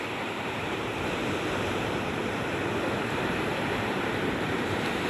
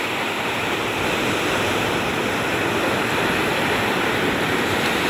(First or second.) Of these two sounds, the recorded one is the second